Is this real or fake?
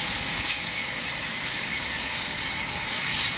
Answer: fake